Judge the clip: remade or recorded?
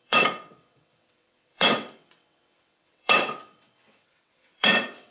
remade